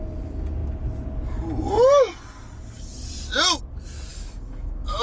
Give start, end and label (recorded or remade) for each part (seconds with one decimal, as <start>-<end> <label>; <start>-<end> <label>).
0.0-4.1 recorded; 4.1-5.0 remade